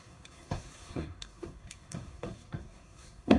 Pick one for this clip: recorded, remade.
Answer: remade